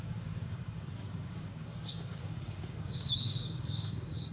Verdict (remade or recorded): remade